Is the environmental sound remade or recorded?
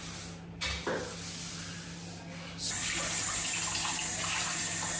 recorded